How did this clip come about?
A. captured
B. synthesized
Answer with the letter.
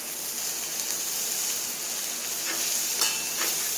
A